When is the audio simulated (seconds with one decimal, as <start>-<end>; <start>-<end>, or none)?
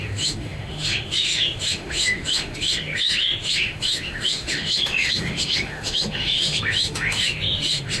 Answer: 0.0-8.0